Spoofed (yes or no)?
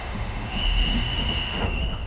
yes